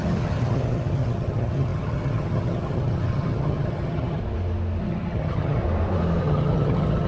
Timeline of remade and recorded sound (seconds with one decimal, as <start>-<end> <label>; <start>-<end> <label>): 0.0-4.2 remade; 4.2-4.8 recorded; 4.8-5.6 remade; 5.6-6.2 recorded; 6.2-7.1 remade